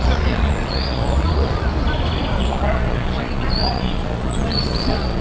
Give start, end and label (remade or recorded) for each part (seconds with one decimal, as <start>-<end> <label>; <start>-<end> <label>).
0.0-1.7 remade; 1.7-2.4 recorded; 2.4-5.2 remade